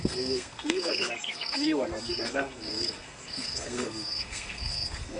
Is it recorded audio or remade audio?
remade